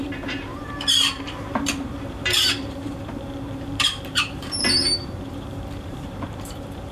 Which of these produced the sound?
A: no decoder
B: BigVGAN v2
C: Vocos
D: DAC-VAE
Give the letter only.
B